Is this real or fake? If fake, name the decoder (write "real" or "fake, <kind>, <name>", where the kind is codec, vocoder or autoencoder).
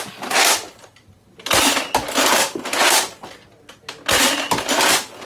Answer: real